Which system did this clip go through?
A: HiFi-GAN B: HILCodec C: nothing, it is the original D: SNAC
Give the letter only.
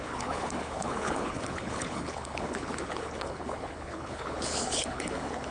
B